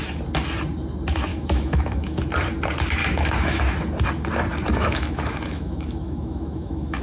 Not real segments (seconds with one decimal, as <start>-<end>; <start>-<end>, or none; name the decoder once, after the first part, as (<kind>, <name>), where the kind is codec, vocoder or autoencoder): 1.3-2.2 (autoencoder, DAC-VAE); 3.0-3.6; 4.7-7.0